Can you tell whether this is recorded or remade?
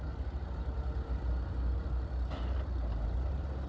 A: recorded